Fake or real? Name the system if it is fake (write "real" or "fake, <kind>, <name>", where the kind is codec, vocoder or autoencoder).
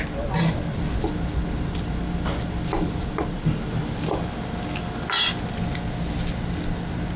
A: real